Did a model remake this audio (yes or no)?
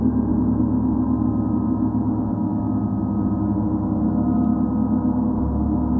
no